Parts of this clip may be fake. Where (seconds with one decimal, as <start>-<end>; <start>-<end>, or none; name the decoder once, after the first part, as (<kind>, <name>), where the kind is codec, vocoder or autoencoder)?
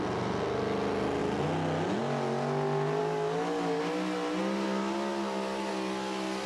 3.0-3.8 (codec, DAC)